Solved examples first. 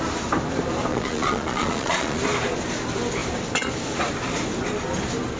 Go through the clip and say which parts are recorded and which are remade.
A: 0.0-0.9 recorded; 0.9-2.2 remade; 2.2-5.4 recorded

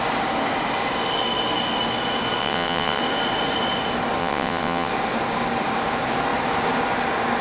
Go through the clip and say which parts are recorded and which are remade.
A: 0.0-2.4 recorded; 2.4-3.0 remade; 3.0-4.2 recorded; 4.2-4.9 remade; 4.9-7.4 recorded

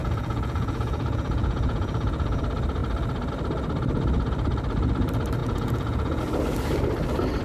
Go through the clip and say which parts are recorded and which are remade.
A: 0.0-2.4 remade; 2.4-5.4 recorded; 5.4-6.2 remade; 6.2-7.4 recorded

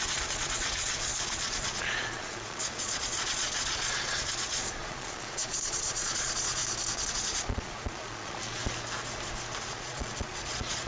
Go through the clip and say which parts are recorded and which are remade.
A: 0.0-6.6 remade; 6.6-7.1 recorded; 7.1-8.6 remade; 8.6-9.6 recorded; 9.6-10.9 remade